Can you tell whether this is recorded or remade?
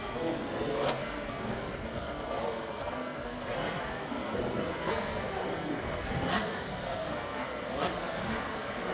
remade